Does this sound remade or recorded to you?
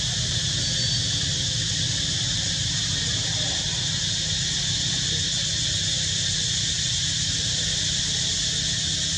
recorded